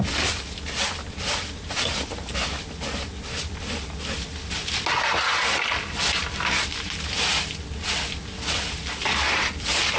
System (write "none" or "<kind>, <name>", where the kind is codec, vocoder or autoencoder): none